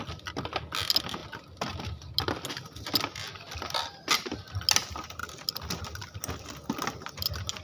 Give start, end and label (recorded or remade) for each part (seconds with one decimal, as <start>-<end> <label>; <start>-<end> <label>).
0.0-7.6 recorded